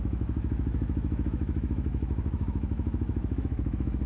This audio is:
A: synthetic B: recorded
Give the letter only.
A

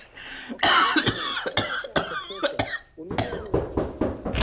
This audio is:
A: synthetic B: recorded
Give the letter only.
B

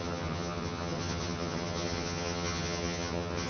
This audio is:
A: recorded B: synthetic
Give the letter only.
B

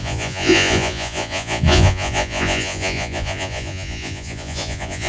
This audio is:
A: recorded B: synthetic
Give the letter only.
B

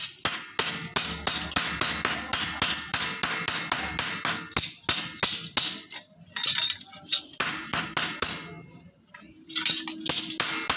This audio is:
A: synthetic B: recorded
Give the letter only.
B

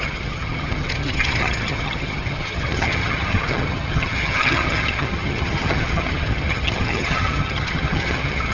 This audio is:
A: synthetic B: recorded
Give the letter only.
A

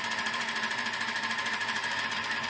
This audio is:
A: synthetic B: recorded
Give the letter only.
A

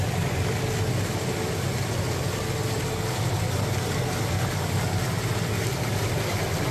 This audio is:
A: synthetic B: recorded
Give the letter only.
B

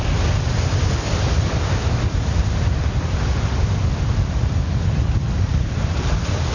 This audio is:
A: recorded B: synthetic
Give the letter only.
A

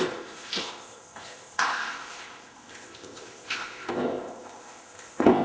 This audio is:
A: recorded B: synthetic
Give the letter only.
B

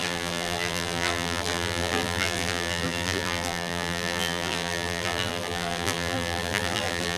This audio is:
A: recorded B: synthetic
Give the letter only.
B